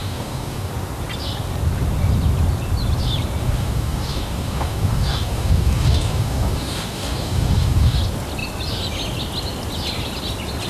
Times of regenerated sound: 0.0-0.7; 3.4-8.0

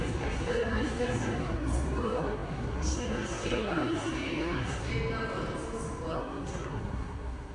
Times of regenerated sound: 0.0-4.9; 6.1-7.5

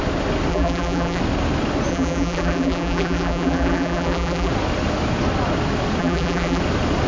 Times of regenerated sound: 0.5-1.2; 1.9-4.5; 6.0-6.6

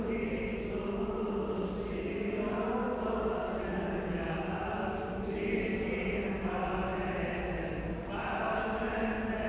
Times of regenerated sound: none

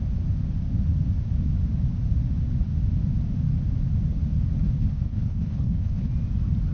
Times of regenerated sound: 4.6-6.1

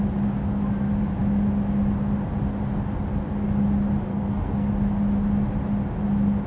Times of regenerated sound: 4.1-4.7